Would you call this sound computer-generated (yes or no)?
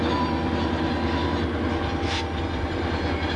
no